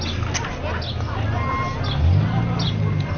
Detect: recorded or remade recorded